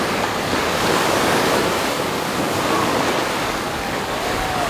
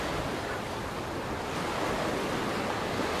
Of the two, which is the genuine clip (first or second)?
second